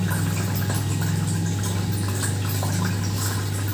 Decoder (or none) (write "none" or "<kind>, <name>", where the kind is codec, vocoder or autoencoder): vocoder, BigVGAN v2